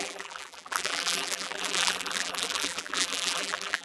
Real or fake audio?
fake